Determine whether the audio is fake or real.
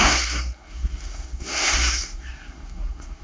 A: fake